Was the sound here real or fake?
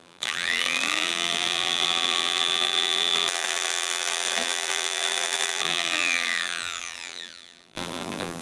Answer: fake